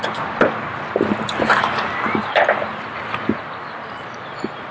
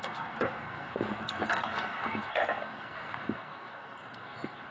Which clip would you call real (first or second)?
first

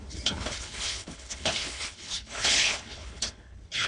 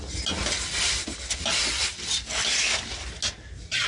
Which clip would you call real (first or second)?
second